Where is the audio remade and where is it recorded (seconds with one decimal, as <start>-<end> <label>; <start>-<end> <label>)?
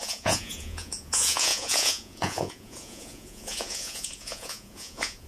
0.0-5.3 remade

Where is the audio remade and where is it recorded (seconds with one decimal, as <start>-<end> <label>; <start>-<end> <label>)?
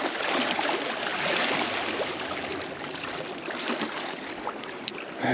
0.0-5.3 recorded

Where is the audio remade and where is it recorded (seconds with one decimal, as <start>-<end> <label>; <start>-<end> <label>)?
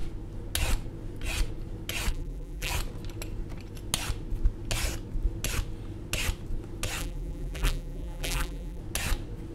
0.0-2.1 recorded; 2.1-2.7 remade; 2.7-7.0 recorded; 7.0-8.8 remade; 8.8-9.5 recorded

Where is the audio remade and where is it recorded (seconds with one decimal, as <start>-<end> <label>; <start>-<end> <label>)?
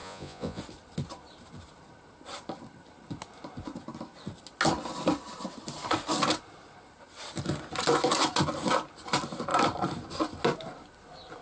0.0-0.6 remade; 0.6-11.4 recorded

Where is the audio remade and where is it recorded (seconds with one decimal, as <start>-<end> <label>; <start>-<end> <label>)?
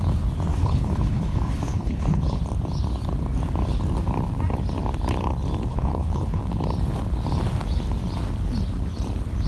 0.0-0.5 recorded; 0.5-2.4 remade; 2.4-5.7 recorded; 5.7-6.4 remade; 6.4-9.5 recorded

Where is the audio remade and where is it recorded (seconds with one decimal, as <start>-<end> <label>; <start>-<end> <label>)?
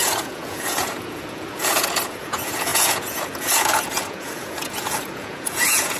0.0-6.0 remade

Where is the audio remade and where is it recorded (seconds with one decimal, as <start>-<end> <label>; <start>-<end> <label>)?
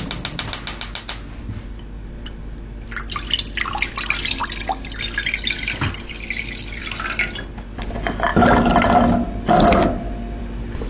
0.0-10.9 recorded